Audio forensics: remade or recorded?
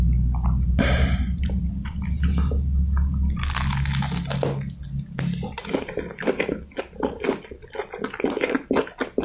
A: recorded